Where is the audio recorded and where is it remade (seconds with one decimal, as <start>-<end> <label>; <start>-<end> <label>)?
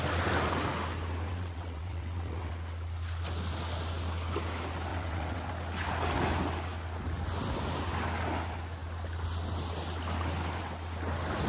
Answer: 0.0-1.3 recorded; 1.3-2.5 remade; 2.5-4.9 recorded; 4.9-5.5 remade; 5.5-11.5 recorded